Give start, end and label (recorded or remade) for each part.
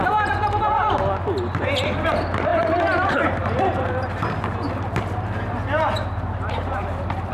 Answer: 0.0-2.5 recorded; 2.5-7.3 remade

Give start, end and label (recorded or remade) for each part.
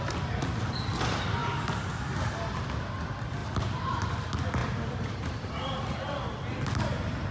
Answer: 0.0-1.4 recorded; 1.4-1.9 remade; 1.9-3.4 recorded; 3.4-4.1 remade; 4.1-4.6 recorded; 4.6-5.5 remade; 5.5-7.3 recorded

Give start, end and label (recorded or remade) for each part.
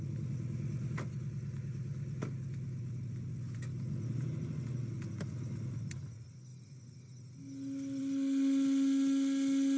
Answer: 0.0-9.8 recorded